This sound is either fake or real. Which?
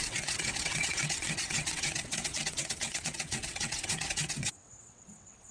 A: fake